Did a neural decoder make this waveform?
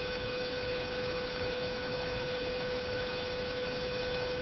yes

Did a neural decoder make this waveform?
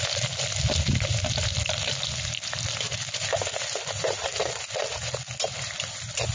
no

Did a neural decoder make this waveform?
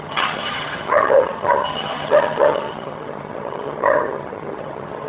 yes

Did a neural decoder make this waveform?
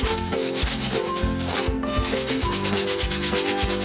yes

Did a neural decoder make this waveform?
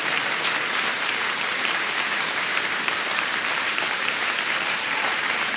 yes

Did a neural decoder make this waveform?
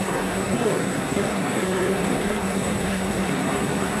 yes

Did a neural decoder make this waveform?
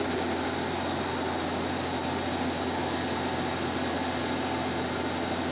no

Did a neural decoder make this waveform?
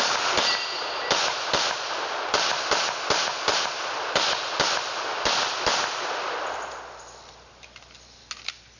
no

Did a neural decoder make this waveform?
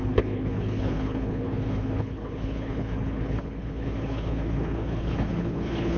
yes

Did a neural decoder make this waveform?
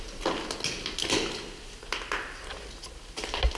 no